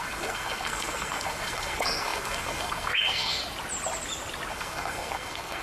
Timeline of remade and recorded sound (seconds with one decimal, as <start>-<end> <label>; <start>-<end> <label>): 0.0-3.4 remade; 3.4-4.5 recorded; 4.5-5.6 remade